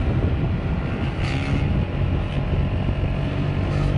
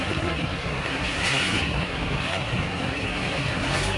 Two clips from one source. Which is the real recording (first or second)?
first